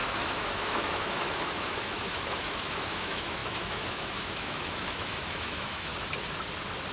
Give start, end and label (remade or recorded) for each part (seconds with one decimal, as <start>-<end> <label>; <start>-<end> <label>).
0.0-5.9 remade; 5.9-6.9 recorded